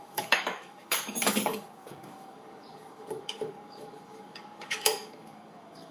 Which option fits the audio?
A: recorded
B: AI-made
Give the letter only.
B